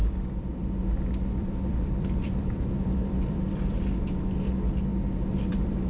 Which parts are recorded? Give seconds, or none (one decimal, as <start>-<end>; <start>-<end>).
0.8-1.4; 3.9-5.9